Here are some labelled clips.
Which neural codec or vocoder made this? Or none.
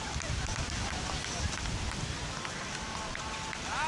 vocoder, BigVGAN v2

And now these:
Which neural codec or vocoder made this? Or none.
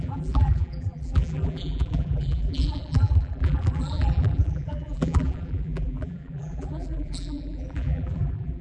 vocoder, BigVGAN v2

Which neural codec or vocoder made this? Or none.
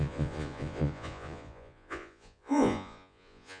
vocoder, Vocos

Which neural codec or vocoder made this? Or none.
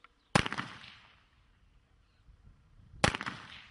none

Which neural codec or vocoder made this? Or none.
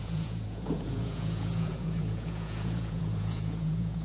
vocoder, Vocos